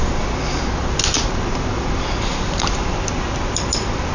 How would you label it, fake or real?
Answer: real